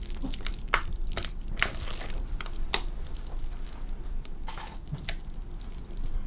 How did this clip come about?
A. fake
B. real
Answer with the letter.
A